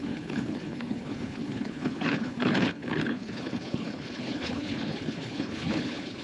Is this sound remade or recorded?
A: remade